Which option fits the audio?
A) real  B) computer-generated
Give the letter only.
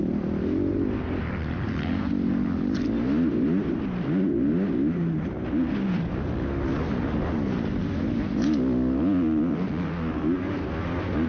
A